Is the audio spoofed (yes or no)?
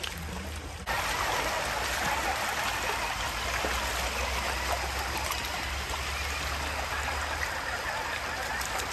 no